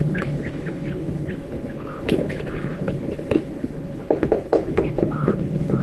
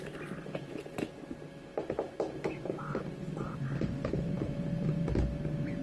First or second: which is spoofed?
first